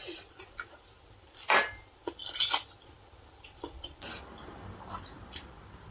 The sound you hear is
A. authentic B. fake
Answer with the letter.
A